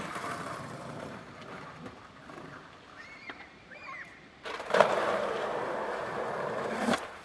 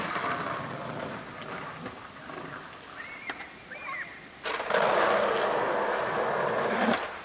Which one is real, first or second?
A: second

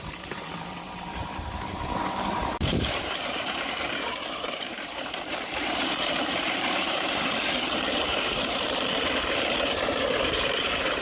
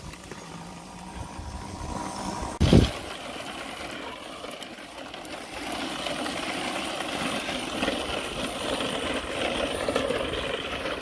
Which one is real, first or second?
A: second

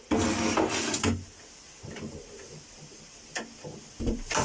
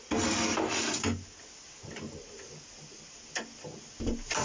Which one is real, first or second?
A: second